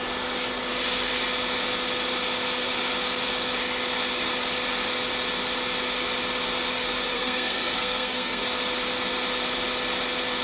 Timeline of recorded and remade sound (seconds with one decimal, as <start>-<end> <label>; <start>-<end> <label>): 0.0-7.1 recorded; 7.1-8.4 remade; 8.4-10.4 recorded